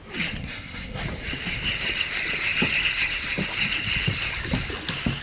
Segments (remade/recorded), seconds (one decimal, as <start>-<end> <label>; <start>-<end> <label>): 0.0-0.4 recorded; 0.4-1.0 remade; 1.0-5.2 recorded